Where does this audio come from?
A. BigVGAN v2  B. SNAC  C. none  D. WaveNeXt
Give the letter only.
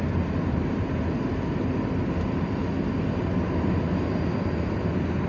C